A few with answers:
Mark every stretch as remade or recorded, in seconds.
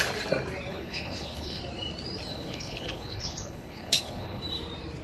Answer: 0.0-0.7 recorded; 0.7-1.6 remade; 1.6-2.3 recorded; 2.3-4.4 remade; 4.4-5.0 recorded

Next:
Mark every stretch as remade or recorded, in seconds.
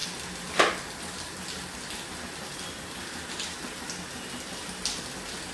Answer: 0.0-5.5 recorded